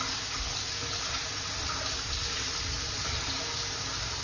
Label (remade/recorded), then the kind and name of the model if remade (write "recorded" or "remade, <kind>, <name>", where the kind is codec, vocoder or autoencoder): recorded